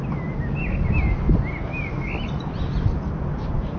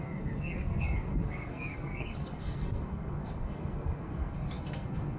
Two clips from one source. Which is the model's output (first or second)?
second